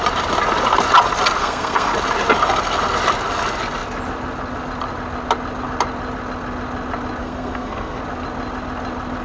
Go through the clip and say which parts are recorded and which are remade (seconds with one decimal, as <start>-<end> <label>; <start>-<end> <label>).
0.0-1.4 recorded; 1.4-1.9 remade; 1.9-7.2 recorded; 7.2-8.0 remade; 8.0-9.2 recorded